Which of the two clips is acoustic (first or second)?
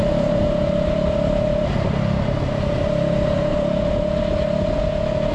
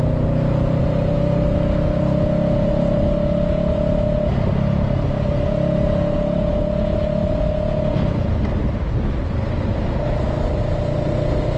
second